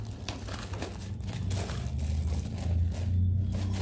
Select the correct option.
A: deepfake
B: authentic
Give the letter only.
B